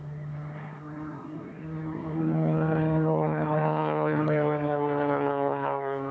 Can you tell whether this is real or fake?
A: fake